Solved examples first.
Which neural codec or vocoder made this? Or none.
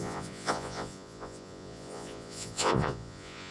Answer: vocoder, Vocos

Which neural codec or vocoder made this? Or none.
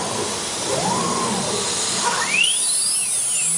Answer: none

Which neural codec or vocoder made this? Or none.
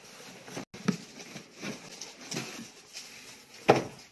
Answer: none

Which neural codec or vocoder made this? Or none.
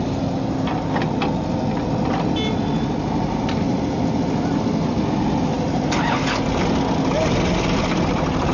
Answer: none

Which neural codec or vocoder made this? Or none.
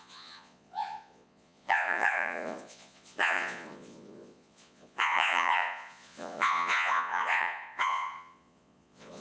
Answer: vocoder, Vocos